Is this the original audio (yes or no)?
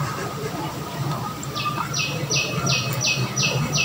no